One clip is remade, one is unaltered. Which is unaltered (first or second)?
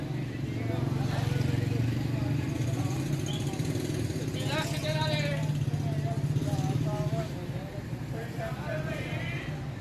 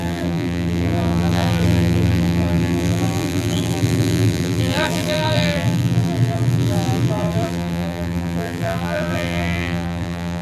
first